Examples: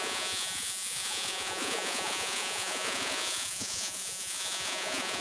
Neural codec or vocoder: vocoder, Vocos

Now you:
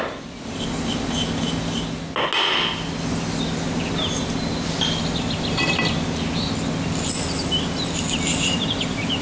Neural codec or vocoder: none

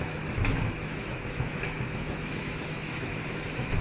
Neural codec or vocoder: autoencoder, DAC-VAE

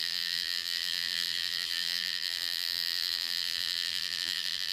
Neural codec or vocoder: vocoder, BigVGAN v2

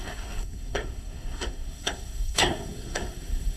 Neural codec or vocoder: codec, SNAC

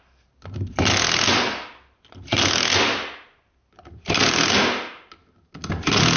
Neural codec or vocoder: none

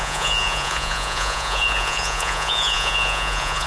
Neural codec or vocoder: vocoder, Vocos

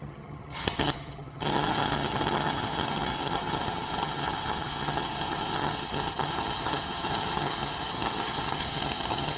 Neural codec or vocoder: vocoder, HiFi-GAN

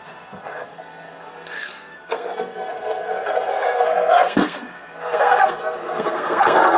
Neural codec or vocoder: codec, SNAC